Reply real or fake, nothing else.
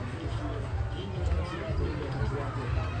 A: real